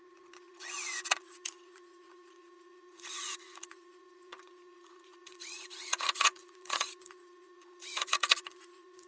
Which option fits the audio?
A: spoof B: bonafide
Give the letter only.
A